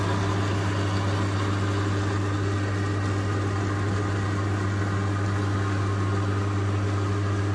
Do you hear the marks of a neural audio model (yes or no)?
no